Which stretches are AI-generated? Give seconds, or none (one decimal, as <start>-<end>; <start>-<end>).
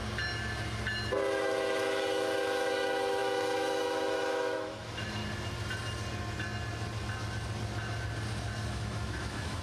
1.4-5.2; 8.7-9.6